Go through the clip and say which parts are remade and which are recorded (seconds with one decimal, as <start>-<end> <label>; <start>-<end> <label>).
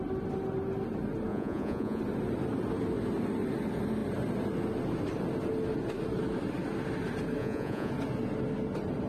0.0-1.3 recorded; 1.3-2.0 remade; 2.0-7.4 recorded; 7.4-7.9 remade; 7.9-9.1 recorded